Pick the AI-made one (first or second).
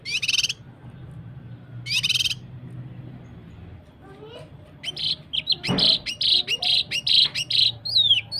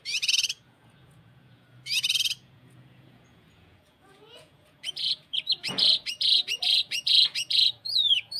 second